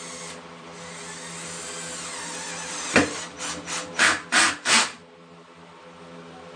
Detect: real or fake real